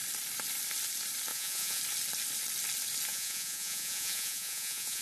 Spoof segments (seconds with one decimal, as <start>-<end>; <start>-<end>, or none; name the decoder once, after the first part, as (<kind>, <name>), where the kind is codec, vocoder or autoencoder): 1.3-1.8 (vocoder, Vocos); 3.1-5.0